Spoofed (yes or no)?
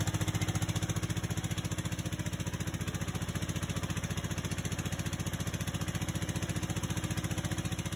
no